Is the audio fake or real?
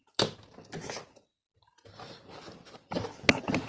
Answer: real